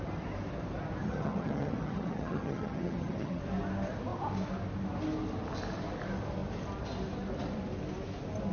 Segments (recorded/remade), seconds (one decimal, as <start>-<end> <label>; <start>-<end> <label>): 0.0-1.0 recorded; 1.0-3.4 remade; 3.4-8.5 recorded